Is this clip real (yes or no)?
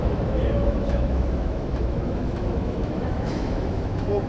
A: no